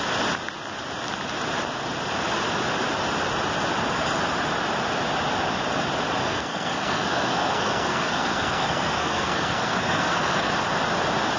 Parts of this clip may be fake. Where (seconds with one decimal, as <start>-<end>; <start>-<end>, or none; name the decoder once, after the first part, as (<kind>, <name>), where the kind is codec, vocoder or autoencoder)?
6.2-10.5 (codec, SNAC)